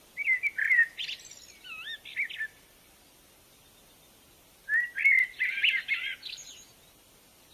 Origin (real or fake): real